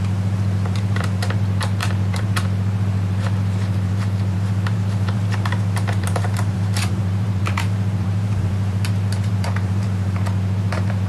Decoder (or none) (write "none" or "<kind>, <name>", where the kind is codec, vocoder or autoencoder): vocoder, BigVGAN v2